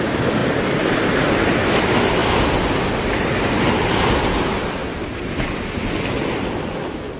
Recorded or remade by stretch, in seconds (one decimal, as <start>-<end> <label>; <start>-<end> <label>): 0.0-4.8 recorded; 4.8-5.4 remade; 5.4-7.2 recorded